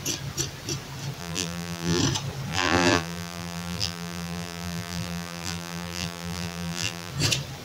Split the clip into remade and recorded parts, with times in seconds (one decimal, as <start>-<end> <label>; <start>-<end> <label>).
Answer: 0.0-1.2 recorded; 1.2-2.0 remade; 2.0-2.5 recorded; 2.5-7.1 remade; 7.1-7.6 recorded